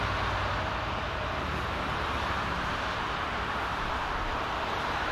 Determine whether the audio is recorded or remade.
recorded